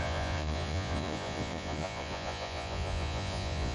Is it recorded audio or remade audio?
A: remade